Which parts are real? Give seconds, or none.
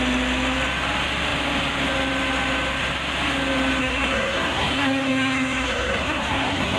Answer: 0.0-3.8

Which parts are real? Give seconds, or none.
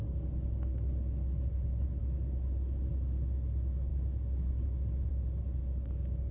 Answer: 0.0-6.3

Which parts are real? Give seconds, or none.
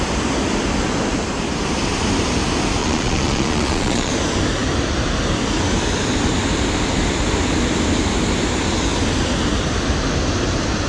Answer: 0.0-2.8; 4.1-10.9